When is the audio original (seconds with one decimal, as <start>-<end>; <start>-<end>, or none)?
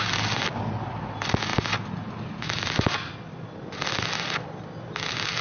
0.0-5.4